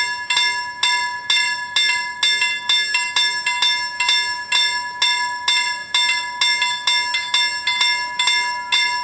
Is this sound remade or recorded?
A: recorded